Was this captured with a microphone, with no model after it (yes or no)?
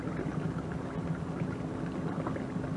yes